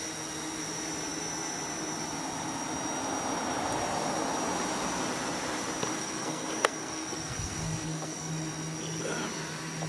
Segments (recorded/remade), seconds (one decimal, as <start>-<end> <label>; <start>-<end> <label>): 0.0-6.0 recorded; 6.0-8.3 remade; 8.3-9.9 recorded